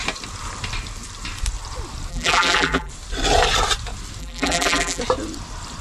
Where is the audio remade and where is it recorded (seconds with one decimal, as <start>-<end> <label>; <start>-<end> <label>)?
0.0-2.1 recorded; 2.1-2.9 remade; 2.9-4.2 recorded; 4.2-5.0 remade; 5.0-5.8 recorded